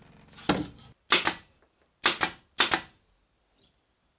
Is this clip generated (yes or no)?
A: no